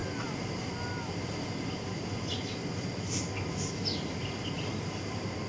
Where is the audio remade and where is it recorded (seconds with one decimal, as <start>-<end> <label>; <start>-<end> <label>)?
0.0-5.5 recorded